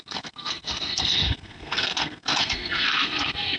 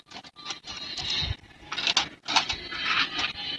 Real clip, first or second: second